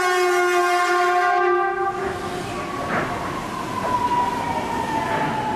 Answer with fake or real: real